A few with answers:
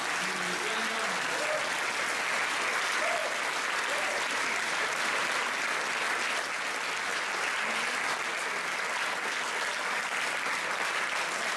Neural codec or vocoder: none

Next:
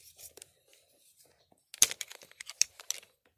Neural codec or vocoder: none